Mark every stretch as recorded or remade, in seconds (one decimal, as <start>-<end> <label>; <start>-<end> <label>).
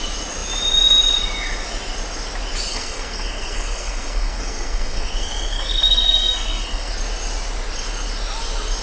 0.0-2.7 recorded; 2.7-6.9 remade; 6.9-8.8 recorded